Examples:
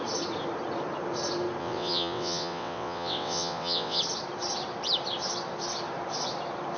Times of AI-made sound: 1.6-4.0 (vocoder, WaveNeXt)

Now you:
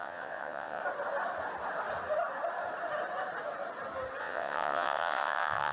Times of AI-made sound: 0.0-0.8 (vocoder, WaveNeXt); 4.2-5.7

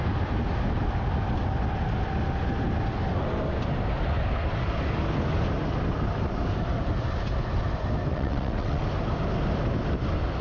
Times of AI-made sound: 8.1-8.8 (vocoder, WaveNeXt)

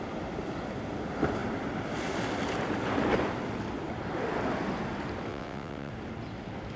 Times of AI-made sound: 5.3-5.9 (vocoder, WaveNeXt)

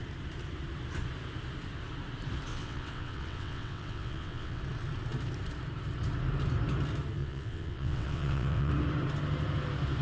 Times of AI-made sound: 2.5-4.6 (vocoder, WaveNeXt); 7.2-8.7

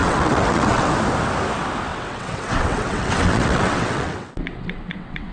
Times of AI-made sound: 0.0-0.9 (vocoder, WaveNeXt); 1.9-5.3

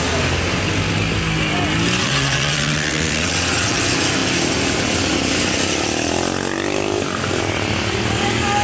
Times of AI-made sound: 2.0-3.8 (vocoder, WaveNeXt)

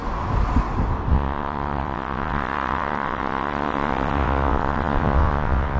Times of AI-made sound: 1.1-5.8 (vocoder, WaveNeXt)